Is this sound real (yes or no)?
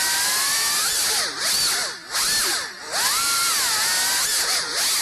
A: yes